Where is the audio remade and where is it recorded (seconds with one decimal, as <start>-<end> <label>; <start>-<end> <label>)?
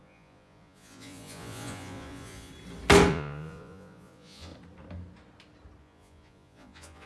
0.0-2.5 remade; 2.5-3.1 recorded; 3.1-4.5 remade; 4.5-5.8 recorded; 5.8-7.1 remade